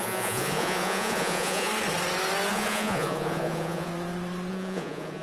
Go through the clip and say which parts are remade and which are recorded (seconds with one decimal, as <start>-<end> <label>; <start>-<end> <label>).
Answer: 0.0-1.7 remade; 1.7-2.5 recorded; 2.5-3.9 remade; 3.9-4.5 recorded; 4.5-5.2 remade

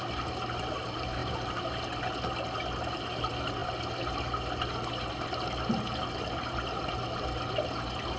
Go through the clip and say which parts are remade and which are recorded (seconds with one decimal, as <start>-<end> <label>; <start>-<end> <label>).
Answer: 0.0-8.2 recorded